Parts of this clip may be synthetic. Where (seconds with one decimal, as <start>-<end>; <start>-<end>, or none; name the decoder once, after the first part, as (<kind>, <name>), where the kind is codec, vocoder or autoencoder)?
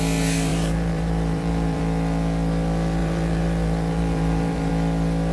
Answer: 0.5-1.8 (vocoder, BigVGAN v2); 3.0-4.7